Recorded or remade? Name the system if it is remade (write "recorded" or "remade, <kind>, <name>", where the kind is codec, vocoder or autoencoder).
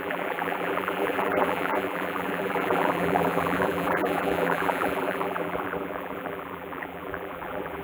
remade, vocoder, BigVGAN v2